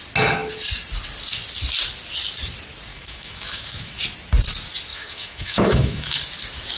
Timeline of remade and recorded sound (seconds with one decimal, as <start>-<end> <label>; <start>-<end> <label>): 0.0-2.9 recorded; 2.9-4.0 remade; 4.0-4.9 recorded; 4.9-6.2 remade; 6.2-6.8 recorded